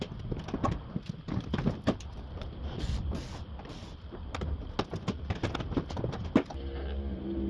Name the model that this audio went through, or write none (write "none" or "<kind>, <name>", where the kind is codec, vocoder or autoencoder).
none